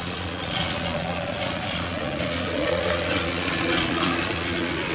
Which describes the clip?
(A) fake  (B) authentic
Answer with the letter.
A